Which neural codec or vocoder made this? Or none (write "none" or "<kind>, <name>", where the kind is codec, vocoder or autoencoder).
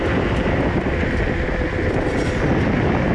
none